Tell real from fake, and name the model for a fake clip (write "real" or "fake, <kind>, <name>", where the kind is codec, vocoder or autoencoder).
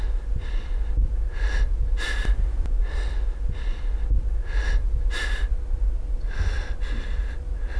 real